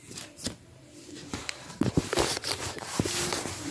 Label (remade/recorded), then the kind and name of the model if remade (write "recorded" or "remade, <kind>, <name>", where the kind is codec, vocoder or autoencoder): remade, vocoder, BigVGAN v2